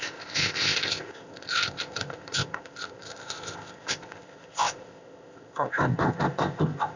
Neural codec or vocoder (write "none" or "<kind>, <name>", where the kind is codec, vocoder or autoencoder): codec, ZipCodec